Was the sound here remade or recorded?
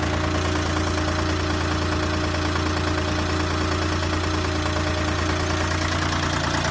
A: recorded